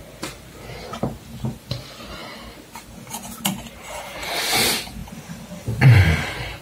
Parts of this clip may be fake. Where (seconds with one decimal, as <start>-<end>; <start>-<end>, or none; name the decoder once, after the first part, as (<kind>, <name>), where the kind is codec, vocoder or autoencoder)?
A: none